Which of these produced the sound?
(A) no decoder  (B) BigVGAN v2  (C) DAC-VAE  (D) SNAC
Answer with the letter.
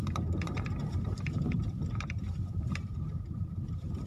B